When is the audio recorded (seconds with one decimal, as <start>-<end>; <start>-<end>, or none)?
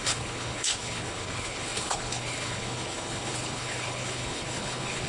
none